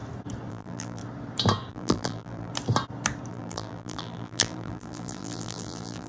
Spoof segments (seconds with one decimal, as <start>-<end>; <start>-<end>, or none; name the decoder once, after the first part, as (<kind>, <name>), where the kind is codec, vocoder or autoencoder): 0.5-1.0 (vocoder, BigVGAN v2); 1.7-2.5; 3.3-6.1